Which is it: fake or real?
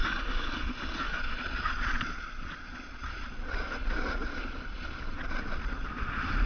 fake